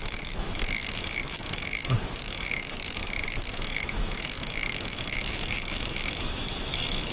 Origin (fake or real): fake